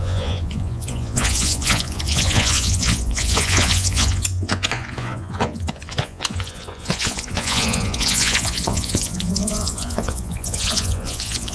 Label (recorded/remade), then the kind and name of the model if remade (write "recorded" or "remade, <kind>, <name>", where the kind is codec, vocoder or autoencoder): remade, vocoder, Vocos